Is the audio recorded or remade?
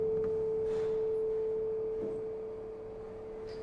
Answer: recorded